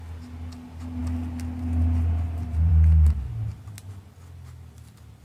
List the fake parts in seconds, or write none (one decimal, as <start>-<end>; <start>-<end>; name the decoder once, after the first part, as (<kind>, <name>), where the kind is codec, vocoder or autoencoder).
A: none